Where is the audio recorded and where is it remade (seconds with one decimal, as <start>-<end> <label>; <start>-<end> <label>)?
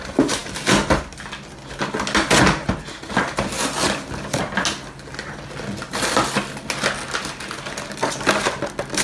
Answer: 0.0-9.0 recorded